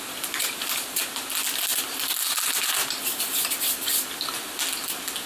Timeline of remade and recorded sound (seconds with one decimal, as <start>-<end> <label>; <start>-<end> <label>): 0.0-5.3 recorded